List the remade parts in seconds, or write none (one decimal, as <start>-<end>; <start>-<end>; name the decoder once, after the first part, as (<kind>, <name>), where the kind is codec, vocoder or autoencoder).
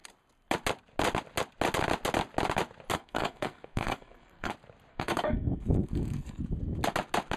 2.9-4.5 (codec, SNAC); 4.9-6.4